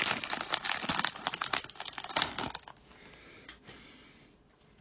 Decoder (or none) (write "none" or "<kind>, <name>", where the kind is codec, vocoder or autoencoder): none